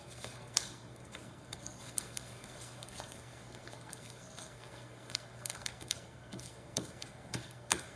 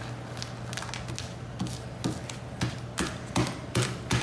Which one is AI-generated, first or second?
first